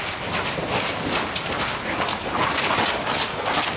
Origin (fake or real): real